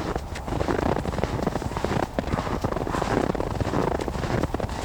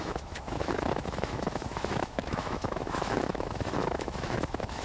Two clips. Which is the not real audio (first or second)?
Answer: second